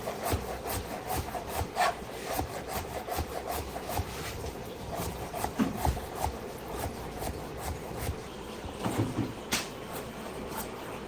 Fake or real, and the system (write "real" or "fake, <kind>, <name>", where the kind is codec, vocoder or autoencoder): fake, vocoder, BigVGAN v2